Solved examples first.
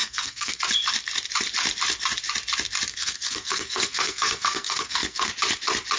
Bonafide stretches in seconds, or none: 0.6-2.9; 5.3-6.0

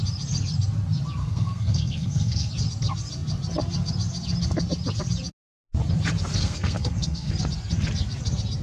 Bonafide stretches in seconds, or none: 0.0-1.2; 2.5-6.4; 7.3-8.6

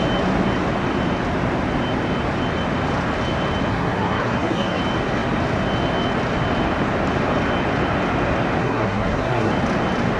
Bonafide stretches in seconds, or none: 0.0-3.7; 4.8-8.6; 9.5-10.2

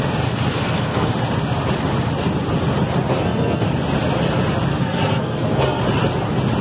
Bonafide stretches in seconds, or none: 0.0-0.5; 1.1-3.1; 3.7-4.7; 5.8-6.6